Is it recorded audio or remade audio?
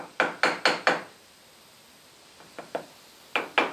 recorded